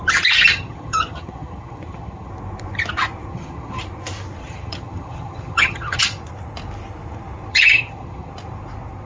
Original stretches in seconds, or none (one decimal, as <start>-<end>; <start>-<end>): 0.0-0.5; 2.3-3.3; 3.8-4.4; 6.0-7.5; 8.3-9.1